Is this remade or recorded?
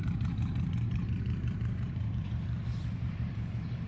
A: remade